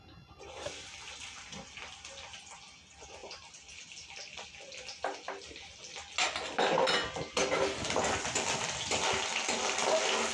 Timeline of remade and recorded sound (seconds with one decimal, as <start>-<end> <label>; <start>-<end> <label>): 0.0-10.3 recorded

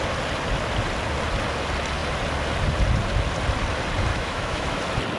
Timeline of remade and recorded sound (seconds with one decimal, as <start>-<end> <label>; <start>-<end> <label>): 0.0-4.1 recorded; 4.1-4.8 remade; 4.8-5.2 recorded

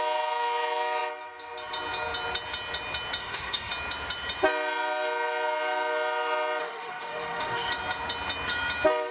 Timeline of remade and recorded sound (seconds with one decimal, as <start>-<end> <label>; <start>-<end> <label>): 0.0-3.2 recorded; 3.2-3.7 remade; 3.7-6.6 recorded; 6.6-7.7 remade; 7.7-9.1 recorded

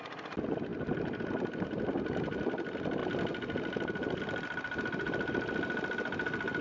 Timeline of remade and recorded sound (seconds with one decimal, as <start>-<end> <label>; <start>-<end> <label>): 0.0-6.6 recorded

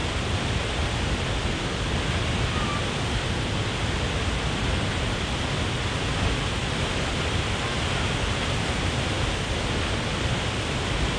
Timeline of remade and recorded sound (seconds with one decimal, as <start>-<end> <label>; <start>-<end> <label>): 0.0-11.2 recorded

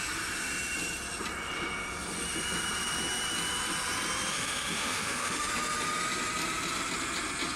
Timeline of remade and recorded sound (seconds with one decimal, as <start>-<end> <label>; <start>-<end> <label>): 0.0-4.3 recorded; 4.3-5.5 remade; 5.5-7.6 recorded

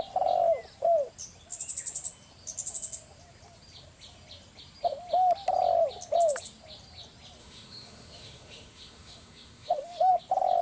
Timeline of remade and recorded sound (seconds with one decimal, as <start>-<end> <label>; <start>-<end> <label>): 0.0-7.4 recorded; 7.4-10.1 remade; 10.1-10.6 recorded